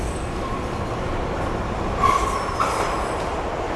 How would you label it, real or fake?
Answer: real